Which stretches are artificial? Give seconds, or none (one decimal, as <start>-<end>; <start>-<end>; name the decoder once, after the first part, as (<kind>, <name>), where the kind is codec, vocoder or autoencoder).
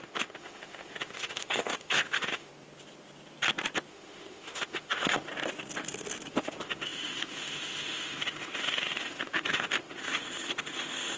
0.0-2.5 (autoencoder, DAC-VAE); 3.9-5.3; 6.3-11.2